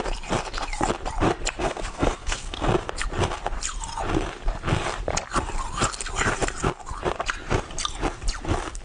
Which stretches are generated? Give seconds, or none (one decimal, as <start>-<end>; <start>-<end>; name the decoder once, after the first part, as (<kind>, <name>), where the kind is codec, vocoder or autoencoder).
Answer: 1.6-2.7 (codec, SNAC)